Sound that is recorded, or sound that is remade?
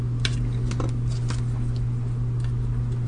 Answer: recorded